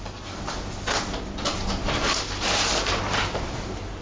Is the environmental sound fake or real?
real